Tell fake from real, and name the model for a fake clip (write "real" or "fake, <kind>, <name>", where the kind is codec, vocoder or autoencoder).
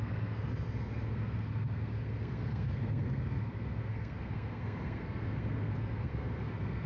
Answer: fake, codec, SNAC